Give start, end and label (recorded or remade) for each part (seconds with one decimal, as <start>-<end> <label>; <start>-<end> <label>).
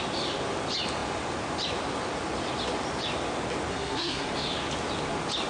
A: 0.0-3.7 recorded; 3.7-4.3 remade; 4.3-5.5 recorded